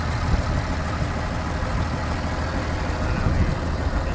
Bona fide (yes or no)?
yes